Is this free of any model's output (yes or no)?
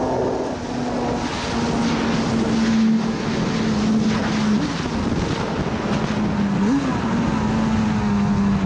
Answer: yes